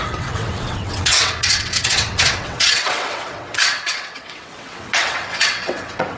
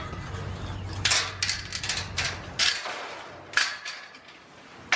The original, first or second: second